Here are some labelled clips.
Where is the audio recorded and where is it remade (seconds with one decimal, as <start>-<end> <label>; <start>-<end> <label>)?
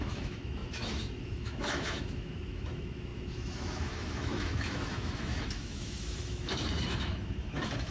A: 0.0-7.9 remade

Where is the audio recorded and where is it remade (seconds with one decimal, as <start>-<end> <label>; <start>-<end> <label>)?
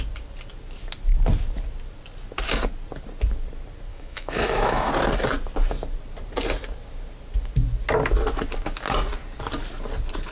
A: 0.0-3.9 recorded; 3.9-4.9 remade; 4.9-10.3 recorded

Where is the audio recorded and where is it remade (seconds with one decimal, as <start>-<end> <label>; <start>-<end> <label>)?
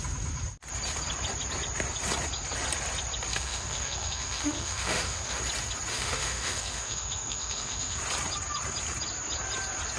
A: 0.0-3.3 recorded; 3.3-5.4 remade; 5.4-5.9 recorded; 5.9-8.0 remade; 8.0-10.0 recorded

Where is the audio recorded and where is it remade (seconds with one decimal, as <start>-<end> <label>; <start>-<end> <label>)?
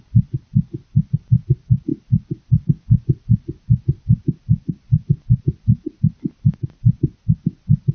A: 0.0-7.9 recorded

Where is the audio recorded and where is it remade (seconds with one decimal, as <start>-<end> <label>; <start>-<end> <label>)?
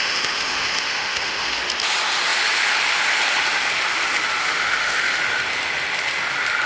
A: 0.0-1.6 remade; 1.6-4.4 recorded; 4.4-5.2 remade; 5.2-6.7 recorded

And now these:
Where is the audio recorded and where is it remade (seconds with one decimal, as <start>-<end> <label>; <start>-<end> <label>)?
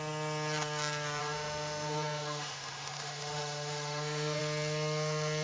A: 0.0-1.2 recorded; 1.2-4.4 remade; 4.4-5.4 recorded